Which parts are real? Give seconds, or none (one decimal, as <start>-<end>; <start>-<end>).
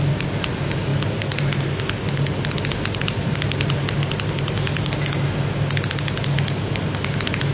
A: 0.0-7.5